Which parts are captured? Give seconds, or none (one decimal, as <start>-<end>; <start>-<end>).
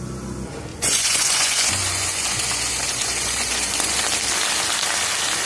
0.0-0.7; 4.0-5.5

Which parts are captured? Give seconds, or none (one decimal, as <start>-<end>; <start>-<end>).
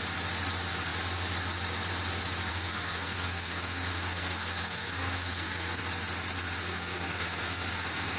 0.0-2.5; 5.8-6.7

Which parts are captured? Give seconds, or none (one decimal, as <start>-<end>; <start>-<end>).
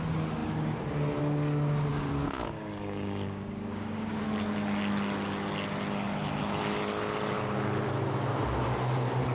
0.0-1.9; 4.2-9.3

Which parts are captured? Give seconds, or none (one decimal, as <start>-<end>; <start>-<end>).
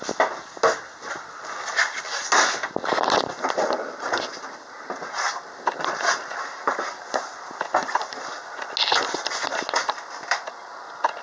0.0-11.2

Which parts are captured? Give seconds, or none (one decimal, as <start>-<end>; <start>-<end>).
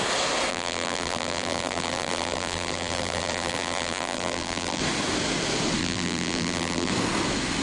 0.0-0.5; 4.8-5.8; 6.9-7.6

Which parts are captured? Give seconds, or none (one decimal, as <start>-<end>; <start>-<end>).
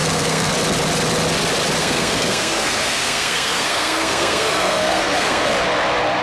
0.5-1.8; 5.5-6.2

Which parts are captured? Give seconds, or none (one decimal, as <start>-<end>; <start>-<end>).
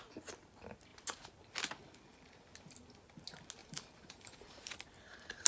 0.0-3.6; 4.9-5.5